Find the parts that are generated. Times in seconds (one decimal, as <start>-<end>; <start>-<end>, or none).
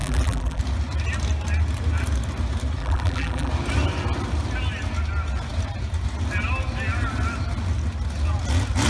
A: 0.0-0.6; 2.8-3.5